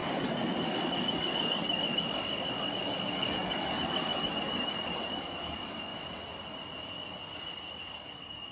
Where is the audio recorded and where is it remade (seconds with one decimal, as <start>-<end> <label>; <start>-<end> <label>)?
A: 0.0-0.6 recorded; 0.6-5.9 remade; 5.9-7.7 recorded; 7.7-8.5 remade